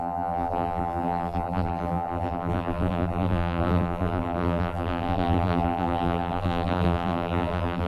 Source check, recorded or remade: remade